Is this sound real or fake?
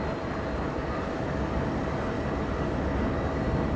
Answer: real